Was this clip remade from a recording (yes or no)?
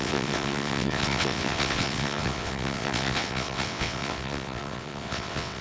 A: yes